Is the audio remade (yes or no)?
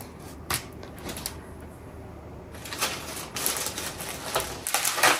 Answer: no